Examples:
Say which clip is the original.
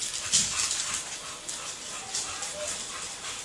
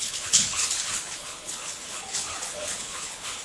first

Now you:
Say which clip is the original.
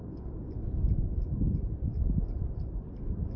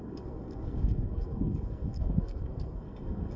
first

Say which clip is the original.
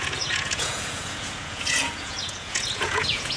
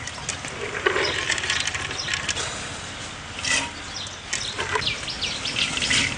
second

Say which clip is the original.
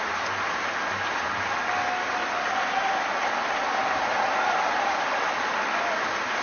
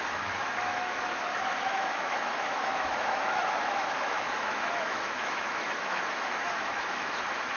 first